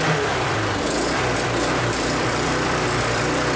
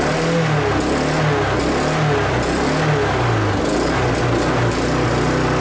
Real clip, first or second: second